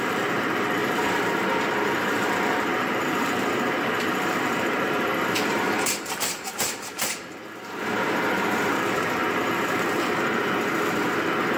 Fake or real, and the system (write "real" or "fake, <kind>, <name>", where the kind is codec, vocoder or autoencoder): fake, vocoder, BigVGAN v2